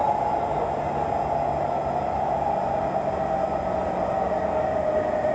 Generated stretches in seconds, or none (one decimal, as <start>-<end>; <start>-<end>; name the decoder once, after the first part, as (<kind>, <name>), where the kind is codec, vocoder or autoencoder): none